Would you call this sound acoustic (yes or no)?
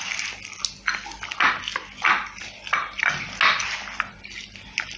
yes